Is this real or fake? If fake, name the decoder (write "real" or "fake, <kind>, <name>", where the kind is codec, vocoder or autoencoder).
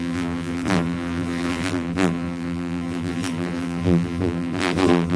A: fake, vocoder, BigVGAN v2